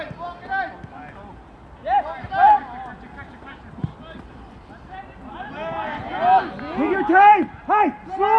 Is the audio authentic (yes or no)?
yes